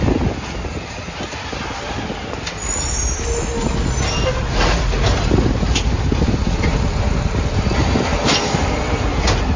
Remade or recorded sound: recorded